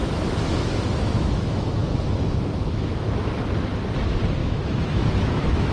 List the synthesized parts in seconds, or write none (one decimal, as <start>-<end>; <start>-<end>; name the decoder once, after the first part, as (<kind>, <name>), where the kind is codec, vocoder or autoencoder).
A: 0.0-3.4 (autoencoder, DAC-VAE); 4.4-5.7